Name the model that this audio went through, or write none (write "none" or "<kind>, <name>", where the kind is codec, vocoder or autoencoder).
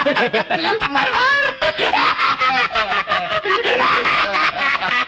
codec, SNAC